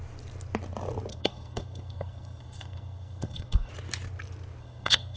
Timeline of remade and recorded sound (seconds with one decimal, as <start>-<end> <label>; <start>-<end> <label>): 0.0-1.1 recorded; 1.1-3.7 remade; 3.7-4.6 recorded; 4.6-5.2 remade